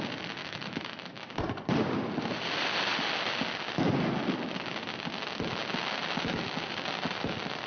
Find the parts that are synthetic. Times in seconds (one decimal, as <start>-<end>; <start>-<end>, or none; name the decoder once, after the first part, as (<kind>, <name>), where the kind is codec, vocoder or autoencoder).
0.4-1.3 (autoencoder, DAC-VAE)